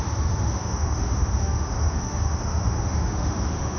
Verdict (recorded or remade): remade